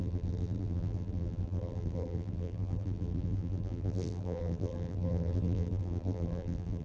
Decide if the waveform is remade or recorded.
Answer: remade